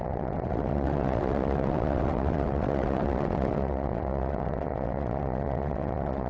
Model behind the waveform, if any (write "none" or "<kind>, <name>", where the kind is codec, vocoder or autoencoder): vocoder, WaveNeXt